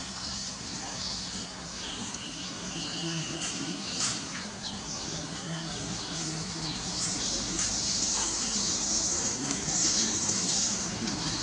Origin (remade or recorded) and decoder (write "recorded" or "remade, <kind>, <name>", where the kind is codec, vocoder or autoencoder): remade, codec, SNAC